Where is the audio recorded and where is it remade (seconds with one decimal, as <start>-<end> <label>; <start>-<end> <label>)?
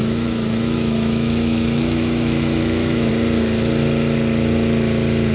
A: 0.0-3.1 remade; 3.1-5.3 recorded